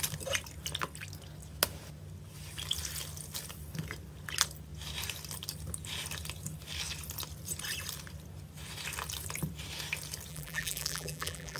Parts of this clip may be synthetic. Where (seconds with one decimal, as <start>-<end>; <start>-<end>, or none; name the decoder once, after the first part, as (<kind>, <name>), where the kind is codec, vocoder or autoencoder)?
10.3-11.6 (vocoder, BigVGAN v2)